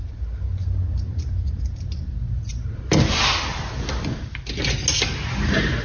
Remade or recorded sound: recorded